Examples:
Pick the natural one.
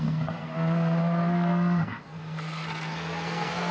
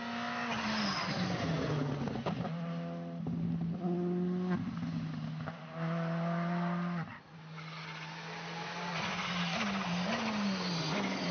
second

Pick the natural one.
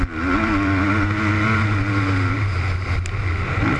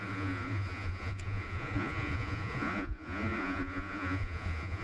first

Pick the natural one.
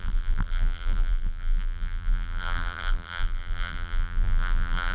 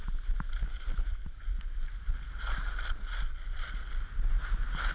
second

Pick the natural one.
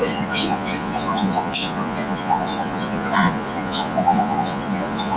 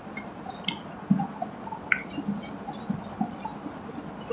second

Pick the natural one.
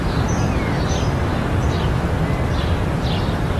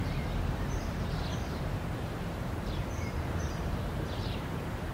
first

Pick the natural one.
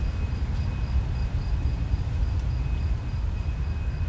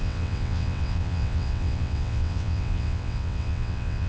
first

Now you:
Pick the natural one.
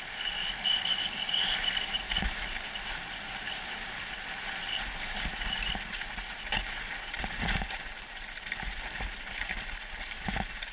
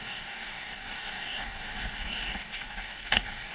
first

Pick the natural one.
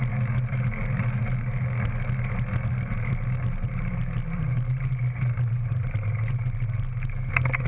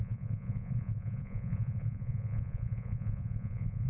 first